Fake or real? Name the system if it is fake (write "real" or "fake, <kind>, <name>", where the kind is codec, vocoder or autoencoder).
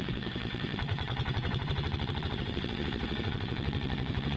fake, vocoder, WaveNeXt